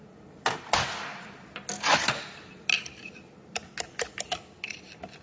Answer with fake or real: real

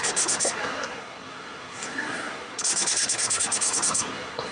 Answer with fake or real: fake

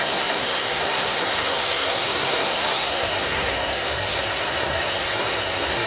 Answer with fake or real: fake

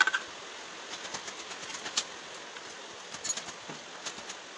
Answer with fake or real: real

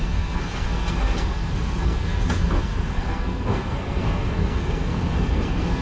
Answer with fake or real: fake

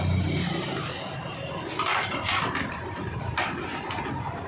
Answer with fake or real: real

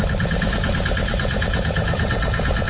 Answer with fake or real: real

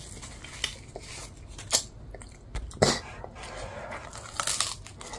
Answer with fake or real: real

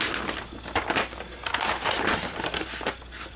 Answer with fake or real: real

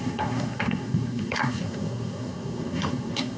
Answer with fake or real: fake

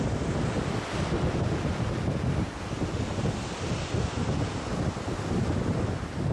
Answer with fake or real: real